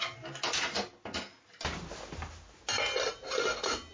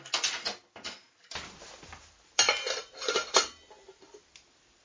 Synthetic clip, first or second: second